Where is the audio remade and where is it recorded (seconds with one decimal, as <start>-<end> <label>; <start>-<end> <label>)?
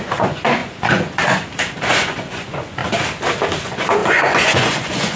0.0-2.8 remade; 2.8-3.6 recorded; 3.6-5.2 remade